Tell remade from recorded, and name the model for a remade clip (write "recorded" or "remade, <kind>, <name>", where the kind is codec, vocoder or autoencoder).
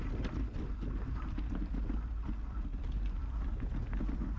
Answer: recorded